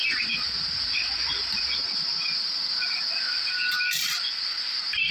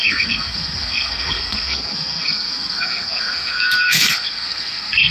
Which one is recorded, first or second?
first